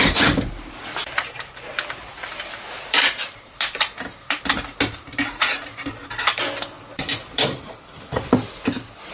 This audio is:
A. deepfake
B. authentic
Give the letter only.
A